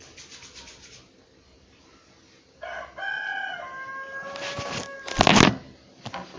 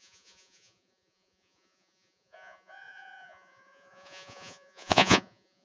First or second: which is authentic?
first